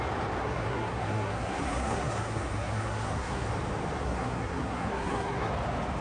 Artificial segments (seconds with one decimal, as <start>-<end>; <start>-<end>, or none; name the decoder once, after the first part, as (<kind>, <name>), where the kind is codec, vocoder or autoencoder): 0.4-3.5 (codec, SNAC); 4.0-5.5